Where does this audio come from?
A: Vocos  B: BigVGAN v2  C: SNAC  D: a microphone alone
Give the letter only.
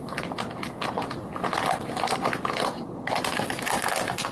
D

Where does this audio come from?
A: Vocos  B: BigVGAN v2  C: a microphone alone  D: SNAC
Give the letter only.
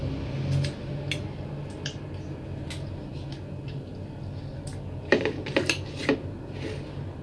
C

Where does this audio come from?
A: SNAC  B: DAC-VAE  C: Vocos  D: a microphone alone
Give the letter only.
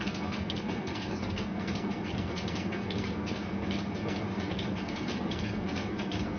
A